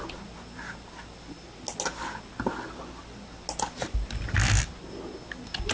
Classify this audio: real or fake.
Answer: real